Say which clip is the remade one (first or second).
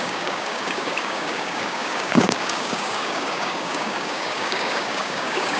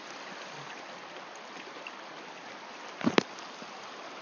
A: first